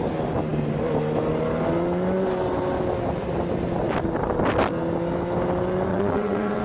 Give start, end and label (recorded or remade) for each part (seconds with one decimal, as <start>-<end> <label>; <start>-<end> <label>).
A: 0.0-5.9 recorded; 5.9-6.6 remade